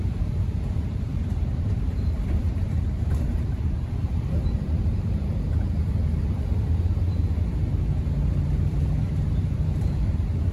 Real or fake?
fake